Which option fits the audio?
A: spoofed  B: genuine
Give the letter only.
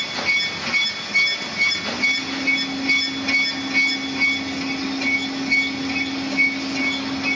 B